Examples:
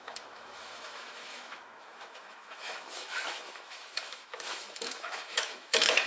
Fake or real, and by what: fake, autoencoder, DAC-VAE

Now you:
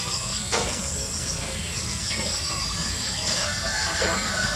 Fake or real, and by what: fake, codec, SNAC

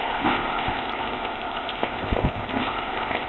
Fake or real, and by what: fake, codec, ZipCodec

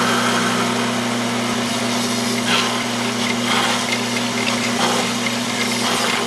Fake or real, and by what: real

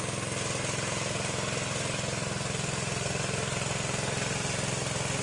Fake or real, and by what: real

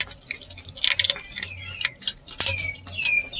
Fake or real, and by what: real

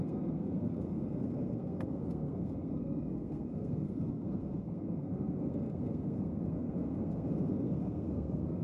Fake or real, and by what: fake, codec, SNAC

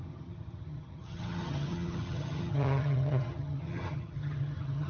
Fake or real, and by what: fake, vocoder, HiFi-GAN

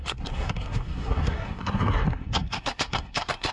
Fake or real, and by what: fake, codec, SNAC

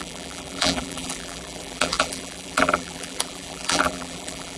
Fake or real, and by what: fake, vocoder, BigVGAN v2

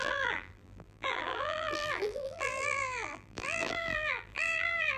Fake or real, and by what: fake, vocoder, BigVGAN v2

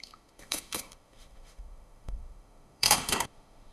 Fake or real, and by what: fake, autoencoder, DAC-VAE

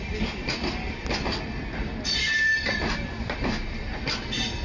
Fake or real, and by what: real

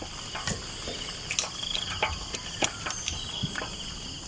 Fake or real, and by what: real